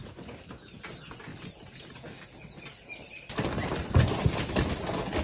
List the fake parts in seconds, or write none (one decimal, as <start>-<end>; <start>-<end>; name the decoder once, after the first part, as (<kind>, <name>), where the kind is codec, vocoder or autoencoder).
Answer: none

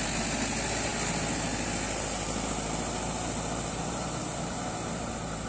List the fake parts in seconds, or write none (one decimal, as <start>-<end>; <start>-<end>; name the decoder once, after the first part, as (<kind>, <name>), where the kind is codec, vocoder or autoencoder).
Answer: none